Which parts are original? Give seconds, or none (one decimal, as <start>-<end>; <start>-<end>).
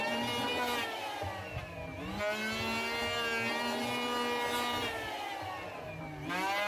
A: 0.0-6.7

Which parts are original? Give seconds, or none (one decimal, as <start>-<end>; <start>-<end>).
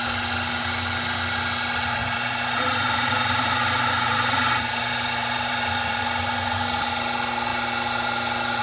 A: 0.0-2.0; 6.0-8.6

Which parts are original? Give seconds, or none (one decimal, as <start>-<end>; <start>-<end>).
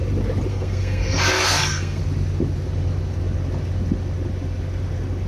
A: 0.0-0.5; 2.0-5.3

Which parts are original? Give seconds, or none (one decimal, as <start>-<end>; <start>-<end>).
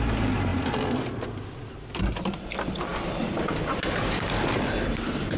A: 0.0-5.4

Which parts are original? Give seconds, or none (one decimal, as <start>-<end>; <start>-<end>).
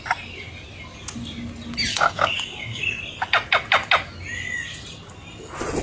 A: 0.0-1.9; 2.8-5.8